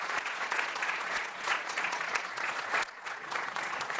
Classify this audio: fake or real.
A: fake